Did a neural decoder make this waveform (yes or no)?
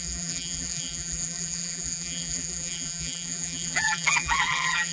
yes